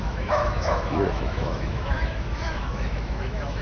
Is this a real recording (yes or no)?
no